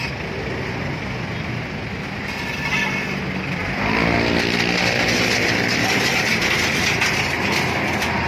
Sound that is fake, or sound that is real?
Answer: real